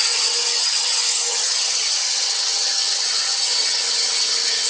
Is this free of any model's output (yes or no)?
no